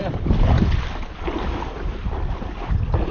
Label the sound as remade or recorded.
recorded